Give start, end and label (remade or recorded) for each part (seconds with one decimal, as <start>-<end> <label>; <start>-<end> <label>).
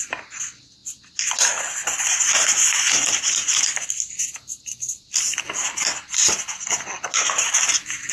0.0-8.1 recorded